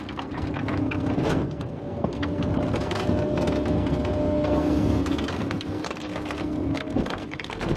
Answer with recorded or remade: remade